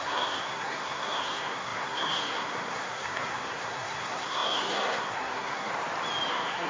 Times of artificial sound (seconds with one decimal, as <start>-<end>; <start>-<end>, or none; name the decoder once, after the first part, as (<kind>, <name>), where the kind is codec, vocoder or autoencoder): 0.0-5.7 (codec, SNAC); 6.3-6.7